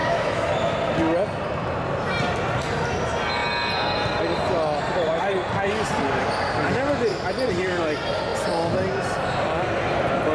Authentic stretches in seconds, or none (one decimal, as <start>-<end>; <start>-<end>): 0.5-10.3